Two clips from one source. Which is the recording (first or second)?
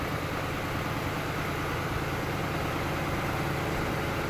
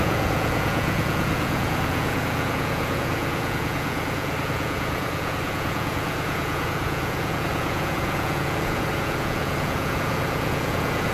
first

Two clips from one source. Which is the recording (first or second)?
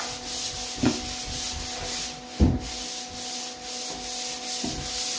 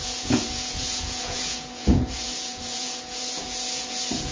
first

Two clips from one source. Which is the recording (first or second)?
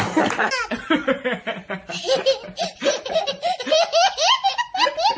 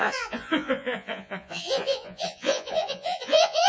first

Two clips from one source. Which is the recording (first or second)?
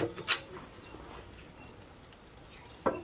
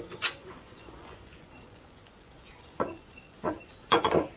first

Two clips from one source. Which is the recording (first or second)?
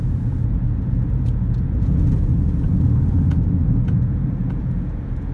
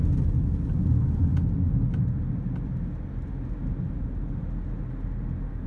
second